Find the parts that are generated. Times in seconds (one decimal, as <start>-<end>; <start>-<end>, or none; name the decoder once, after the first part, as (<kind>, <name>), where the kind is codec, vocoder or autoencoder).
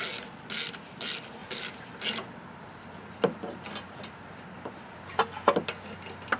none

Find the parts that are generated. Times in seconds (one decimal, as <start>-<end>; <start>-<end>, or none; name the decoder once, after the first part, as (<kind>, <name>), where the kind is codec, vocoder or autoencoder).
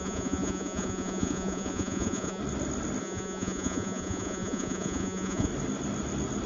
0.0-2.4 (vocoder, Vocos); 3.0-5.5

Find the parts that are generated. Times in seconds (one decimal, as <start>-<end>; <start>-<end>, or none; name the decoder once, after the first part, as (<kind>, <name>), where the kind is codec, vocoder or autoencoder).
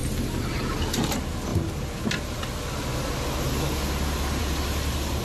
none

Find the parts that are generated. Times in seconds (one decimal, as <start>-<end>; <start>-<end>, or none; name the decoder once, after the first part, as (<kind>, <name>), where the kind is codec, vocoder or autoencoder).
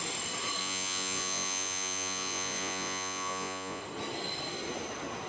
0.6-3.8 (vocoder, Vocos)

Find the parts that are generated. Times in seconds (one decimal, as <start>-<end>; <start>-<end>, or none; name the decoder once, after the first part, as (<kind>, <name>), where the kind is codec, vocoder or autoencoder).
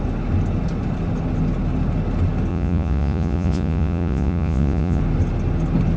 2.5-5.0 (vocoder, Vocos)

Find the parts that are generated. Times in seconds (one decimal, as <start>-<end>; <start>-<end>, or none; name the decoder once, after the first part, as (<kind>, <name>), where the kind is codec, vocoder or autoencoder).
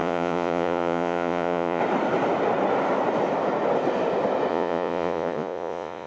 0.0-1.8 (vocoder, Vocos); 4.5-6.1